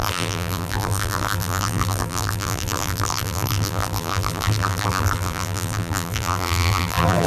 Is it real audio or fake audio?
fake